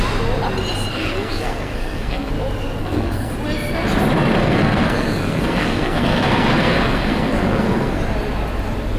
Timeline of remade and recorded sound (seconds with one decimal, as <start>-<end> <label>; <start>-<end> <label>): 0.0-0.9 recorded; 0.9-2.3 remade; 2.3-2.8 recorded; 2.8-3.3 remade; 3.3-4.4 recorded; 4.4-8.0 remade; 8.0-9.0 recorded